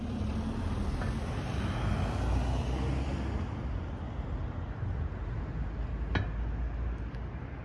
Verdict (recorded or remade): recorded